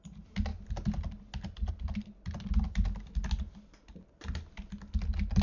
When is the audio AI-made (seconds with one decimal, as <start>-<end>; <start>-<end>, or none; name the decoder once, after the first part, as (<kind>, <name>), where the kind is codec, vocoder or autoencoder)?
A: none